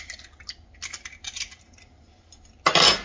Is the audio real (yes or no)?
yes